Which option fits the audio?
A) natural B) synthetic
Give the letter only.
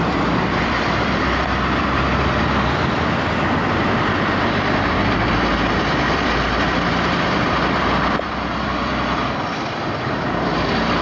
B